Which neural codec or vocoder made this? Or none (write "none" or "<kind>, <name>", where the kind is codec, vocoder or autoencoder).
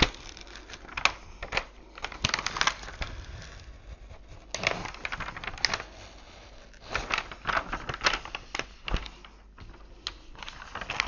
none